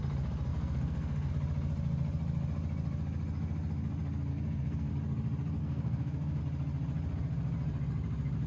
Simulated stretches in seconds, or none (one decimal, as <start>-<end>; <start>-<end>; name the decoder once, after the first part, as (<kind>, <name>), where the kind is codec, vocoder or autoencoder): 0.5-1.3 (codec, SNAC); 4.3-4.9; 5.6-6.4